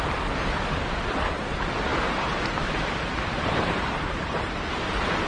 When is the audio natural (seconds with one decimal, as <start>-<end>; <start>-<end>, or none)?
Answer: 0.0-5.3